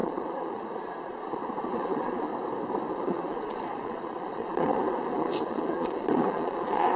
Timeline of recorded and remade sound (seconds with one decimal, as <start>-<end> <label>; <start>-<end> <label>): 0.0-2.3 remade; 2.3-2.9 recorded; 2.9-7.0 remade

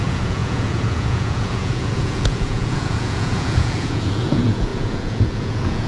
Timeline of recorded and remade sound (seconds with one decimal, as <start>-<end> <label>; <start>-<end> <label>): 0.0-5.9 remade

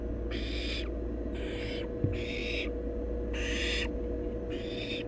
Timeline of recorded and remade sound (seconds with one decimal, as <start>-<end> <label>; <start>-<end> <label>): 0.0-5.1 recorded

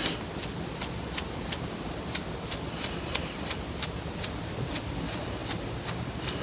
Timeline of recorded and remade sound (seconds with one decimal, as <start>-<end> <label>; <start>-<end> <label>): 0.0-6.4 recorded

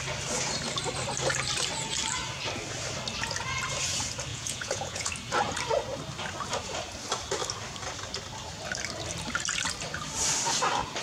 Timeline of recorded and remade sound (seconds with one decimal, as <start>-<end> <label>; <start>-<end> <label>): 0.0-4.3 recorded; 4.3-5.1 remade; 5.1-11.0 recorded

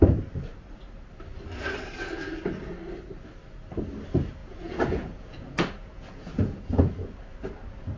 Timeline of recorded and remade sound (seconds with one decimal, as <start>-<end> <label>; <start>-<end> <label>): 0.0-4.4 recorded; 4.4-6.7 remade; 6.7-8.0 recorded